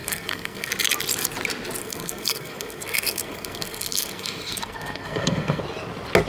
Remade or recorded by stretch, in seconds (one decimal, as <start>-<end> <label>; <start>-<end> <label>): 0.0-0.7 remade; 0.7-1.8 recorded; 1.8-5.6 remade; 5.6-6.3 recorded